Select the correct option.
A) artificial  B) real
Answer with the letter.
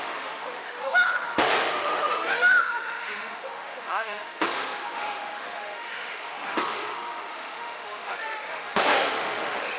A